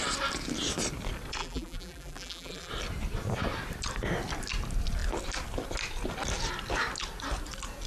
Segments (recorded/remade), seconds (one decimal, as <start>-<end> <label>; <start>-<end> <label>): 0.0-1.4 recorded; 1.4-2.7 remade; 2.7-7.9 recorded